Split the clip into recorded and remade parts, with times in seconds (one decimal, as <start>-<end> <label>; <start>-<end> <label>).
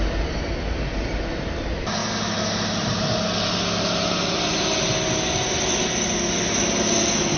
0.0-7.4 recorded